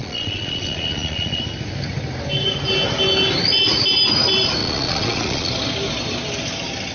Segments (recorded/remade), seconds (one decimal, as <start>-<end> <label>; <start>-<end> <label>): 0.0-1.4 remade; 1.4-4.6 recorded; 4.6-5.5 remade; 5.5-6.9 recorded